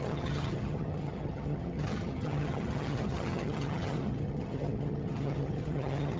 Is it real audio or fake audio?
fake